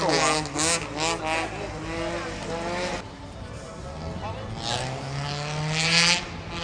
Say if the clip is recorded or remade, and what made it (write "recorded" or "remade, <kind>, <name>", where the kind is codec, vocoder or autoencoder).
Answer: recorded